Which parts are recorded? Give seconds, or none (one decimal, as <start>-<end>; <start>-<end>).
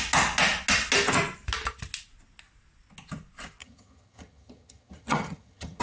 0.0-3.6